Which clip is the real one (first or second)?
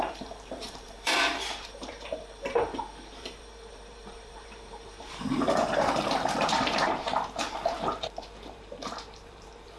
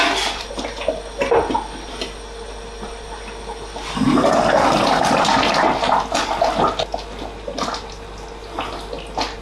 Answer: second